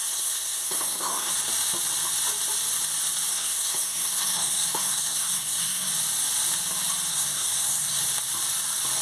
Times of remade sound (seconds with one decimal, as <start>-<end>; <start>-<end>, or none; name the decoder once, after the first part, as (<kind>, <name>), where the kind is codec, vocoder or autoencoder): 0.0-1.3 (codec, SNAC); 3.3-5.9; 7.1-8.0